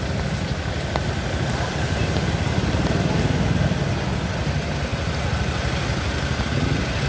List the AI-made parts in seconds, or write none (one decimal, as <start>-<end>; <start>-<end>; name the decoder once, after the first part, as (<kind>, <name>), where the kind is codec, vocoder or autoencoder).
none